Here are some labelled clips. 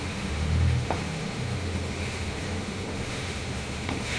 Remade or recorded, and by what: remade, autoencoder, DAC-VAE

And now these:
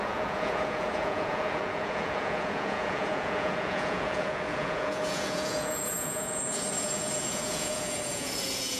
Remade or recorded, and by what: remade, vocoder, Vocos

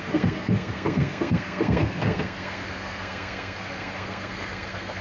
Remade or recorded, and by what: remade, codec, SNAC